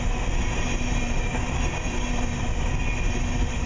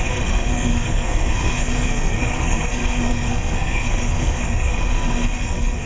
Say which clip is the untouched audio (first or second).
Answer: first